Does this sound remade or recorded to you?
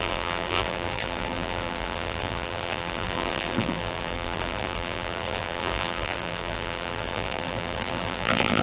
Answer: remade